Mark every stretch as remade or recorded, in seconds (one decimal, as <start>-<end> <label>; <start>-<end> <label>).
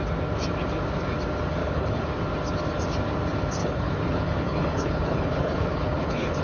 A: 0.0-1.6 recorded; 1.6-2.2 remade; 2.2-3.6 recorded; 3.6-6.4 remade